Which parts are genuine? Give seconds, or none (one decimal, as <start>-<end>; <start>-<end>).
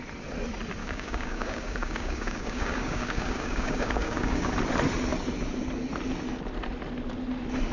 0.0-0.8; 4.5-7.7